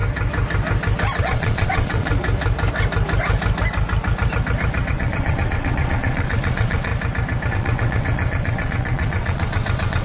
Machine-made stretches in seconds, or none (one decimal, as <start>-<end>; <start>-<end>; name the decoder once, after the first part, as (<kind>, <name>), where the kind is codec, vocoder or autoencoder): 1.2-2.1 (vocoder, WaveNeXt); 4.9-6.9; 7.5-10.0

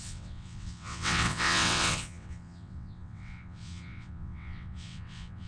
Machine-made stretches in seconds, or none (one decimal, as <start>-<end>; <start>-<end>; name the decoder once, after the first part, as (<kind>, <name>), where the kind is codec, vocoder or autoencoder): 0.0-5.5 (vocoder, WaveNeXt)

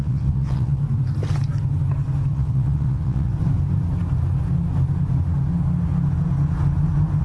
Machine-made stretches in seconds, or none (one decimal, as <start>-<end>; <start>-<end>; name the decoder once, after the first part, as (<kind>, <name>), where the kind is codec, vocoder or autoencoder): 0.0-0.8 (vocoder, WaveNeXt); 2.3-3.3

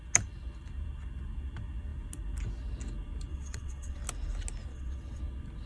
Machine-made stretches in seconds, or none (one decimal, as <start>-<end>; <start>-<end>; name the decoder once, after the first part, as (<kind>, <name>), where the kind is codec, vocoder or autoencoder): 3.3-4.0 (vocoder, WaveNeXt); 4.7-5.2

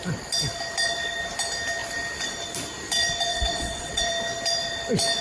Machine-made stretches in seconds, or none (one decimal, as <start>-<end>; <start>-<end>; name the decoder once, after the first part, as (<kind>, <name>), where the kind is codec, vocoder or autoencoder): 3.3-4.1 (vocoder, WaveNeXt)